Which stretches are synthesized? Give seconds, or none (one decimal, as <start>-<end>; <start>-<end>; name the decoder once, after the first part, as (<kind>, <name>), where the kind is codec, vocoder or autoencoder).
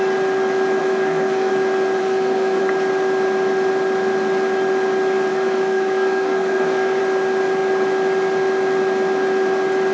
0.8-1.5 (codec, SNAC); 2.0-2.6; 5.3-7.0